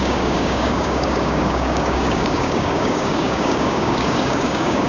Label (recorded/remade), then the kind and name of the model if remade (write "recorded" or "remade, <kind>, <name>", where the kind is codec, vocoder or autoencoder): remade, codec, DAC